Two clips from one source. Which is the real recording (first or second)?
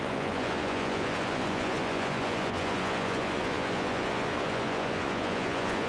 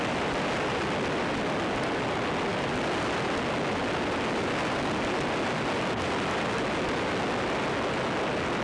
second